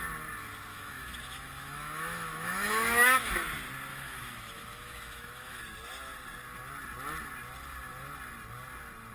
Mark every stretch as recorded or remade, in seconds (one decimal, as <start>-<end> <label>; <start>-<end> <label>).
0.0-0.7 recorded; 0.7-3.3 remade; 3.3-3.9 recorded; 3.9-5.6 remade; 5.6-9.1 recorded

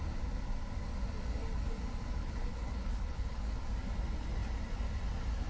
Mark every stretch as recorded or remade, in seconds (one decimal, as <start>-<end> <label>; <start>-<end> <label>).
0.0-2.2 recorded; 2.2-3.6 remade; 3.6-5.5 recorded

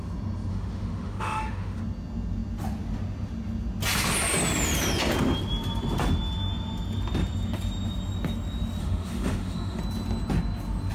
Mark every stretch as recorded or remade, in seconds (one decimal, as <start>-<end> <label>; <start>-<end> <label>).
0.0-0.5 recorded; 0.5-1.8 remade; 1.8-8.8 recorded; 8.8-9.8 remade; 9.8-10.9 recorded

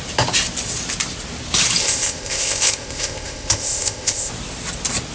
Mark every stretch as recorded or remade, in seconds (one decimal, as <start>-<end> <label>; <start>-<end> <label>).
0.0-1.8 recorded; 1.8-4.3 remade; 4.3-5.1 recorded